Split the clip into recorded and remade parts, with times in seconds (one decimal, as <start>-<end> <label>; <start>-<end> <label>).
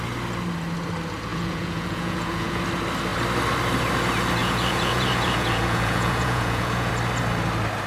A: 0.0-1.3 recorded; 1.3-2.6 remade; 2.6-4.4 recorded; 4.4-6.9 remade; 6.9-7.9 recorded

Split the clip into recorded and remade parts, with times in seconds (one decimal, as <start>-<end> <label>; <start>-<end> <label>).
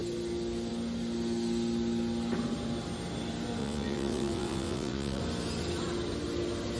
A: 0.0-3.6 recorded; 3.6-5.2 remade; 5.2-6.8 recorded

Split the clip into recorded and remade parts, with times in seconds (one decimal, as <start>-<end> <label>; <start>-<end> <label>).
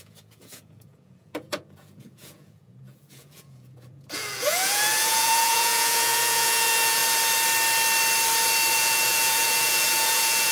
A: 0.0-7.0 remade; 7.0-8.7 recorded; 8.7-10.5 remade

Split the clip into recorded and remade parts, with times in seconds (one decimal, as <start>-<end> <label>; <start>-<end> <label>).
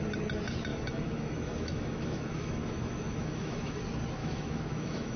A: 0.0-0.7 recorded; 0.7-3.8 remade; 3.8-4.2 recorded; 4.2-5.2 remade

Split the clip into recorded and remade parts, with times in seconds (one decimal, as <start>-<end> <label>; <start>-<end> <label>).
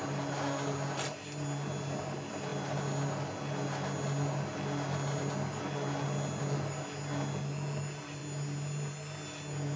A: 0.0-9.8 recorded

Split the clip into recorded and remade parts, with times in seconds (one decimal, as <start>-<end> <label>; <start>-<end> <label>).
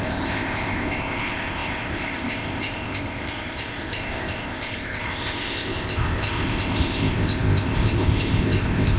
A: 0.0-9.0 remade